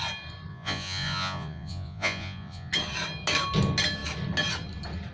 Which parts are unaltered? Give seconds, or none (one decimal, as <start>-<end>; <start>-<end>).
0.0-0.5; 2.7-5.1